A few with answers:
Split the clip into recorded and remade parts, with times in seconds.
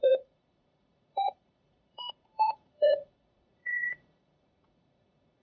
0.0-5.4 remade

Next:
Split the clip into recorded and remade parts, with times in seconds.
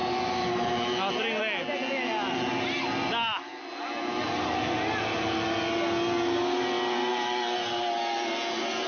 0.0-8.9 recorded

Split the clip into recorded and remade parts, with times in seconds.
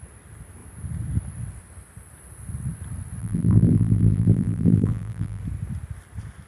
0.0-3.2 recorded; 3.2-5.4 remade; 5.4-6.5 recorded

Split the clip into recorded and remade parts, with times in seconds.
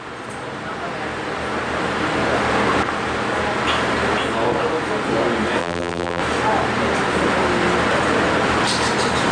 0.0-5.6 recorded; 5.6-6.2 remade; 6.2-9.3 recorded